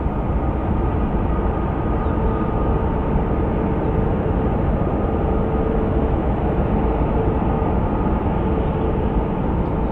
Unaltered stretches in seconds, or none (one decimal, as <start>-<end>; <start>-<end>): 0.0-9.9